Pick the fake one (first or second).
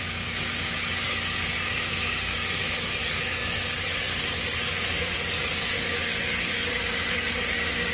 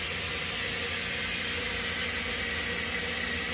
first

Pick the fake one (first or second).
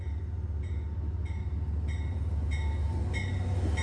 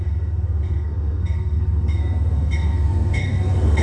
second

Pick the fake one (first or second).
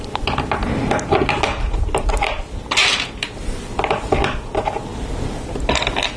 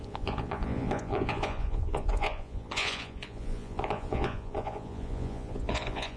second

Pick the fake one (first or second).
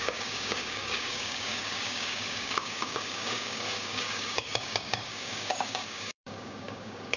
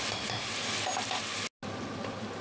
first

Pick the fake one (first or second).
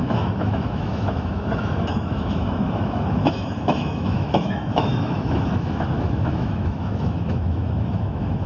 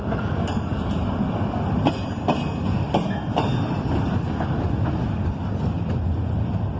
first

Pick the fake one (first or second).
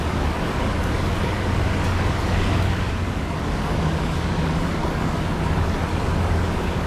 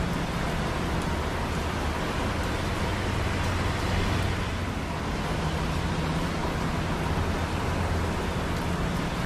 first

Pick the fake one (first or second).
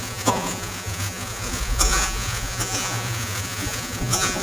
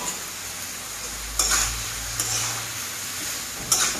first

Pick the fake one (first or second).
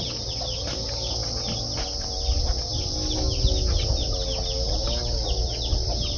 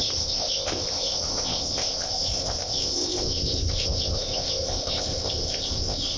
second